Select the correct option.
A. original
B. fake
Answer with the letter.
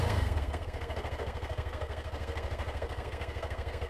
B